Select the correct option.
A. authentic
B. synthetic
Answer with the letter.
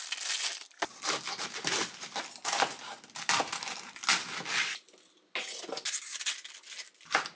A